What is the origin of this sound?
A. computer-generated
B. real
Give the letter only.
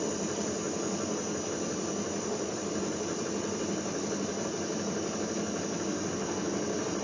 B